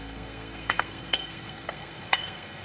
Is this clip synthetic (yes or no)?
yes